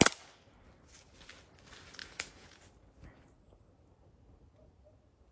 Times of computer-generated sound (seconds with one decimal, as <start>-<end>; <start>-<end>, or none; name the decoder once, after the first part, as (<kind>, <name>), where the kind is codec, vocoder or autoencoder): 2.0-2.6 (vocoder, Vocos)